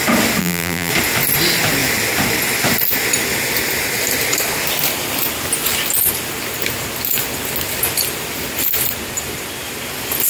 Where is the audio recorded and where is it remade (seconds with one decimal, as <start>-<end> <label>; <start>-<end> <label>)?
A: 0.0-0.4 recorded; 0.4-0.9 remade; 0.9-10.3 recorded